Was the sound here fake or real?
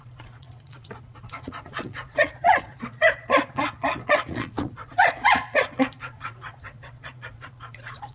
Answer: fake